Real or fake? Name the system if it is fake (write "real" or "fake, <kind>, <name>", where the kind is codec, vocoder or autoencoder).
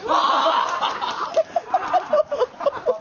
real